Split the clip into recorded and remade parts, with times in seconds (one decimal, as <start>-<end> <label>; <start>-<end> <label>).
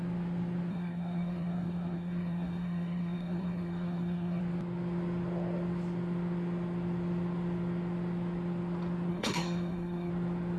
0.0-0.7 recorded; 0.7-4.4 remade; 4.4-9.1 recorded; 9.1-10.1 remade; 10.1-10.6 recorded